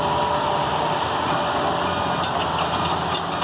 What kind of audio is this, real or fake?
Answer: real